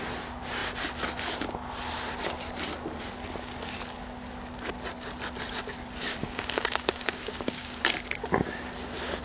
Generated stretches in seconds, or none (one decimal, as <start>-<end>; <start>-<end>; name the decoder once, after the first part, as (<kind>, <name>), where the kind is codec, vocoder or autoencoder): 6.2-7.8 (codec, DAC)

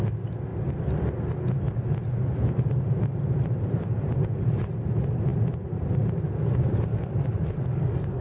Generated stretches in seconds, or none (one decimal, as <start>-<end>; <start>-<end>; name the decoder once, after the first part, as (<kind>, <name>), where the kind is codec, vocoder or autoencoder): 6.9-8.2 (codec, DAC)

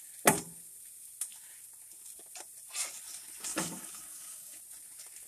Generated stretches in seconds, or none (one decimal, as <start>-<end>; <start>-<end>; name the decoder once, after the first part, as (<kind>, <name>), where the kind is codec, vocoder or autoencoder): 3.5-4.6 (codec, DAC)

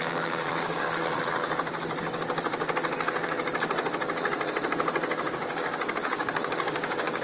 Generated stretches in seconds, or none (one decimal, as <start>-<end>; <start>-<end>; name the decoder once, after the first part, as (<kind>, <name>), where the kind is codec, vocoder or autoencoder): 0.0-1.0 (codec, DAC); 5.3-7.2